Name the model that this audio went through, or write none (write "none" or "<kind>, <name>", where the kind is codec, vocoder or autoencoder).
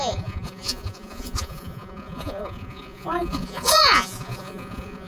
vocoder, Vocos